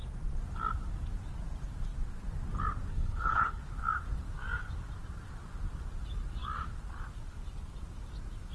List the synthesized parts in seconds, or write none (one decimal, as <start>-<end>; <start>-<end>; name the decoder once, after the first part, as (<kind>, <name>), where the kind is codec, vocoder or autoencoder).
2.9-3.6 (codec, HILCodec)